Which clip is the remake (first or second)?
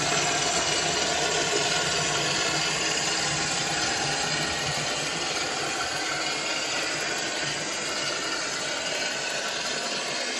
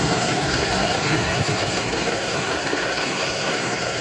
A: second